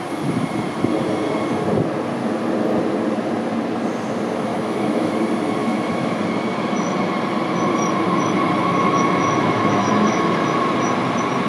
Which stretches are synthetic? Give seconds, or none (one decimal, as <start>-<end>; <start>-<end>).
4.5-5.1; 5.6-6.2; 8.6-10.3